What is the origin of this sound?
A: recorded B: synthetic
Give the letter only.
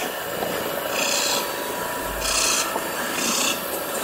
A